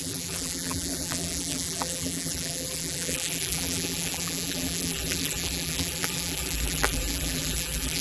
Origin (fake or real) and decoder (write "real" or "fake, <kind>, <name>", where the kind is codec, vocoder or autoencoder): fake, vocoder, BigVGAN v2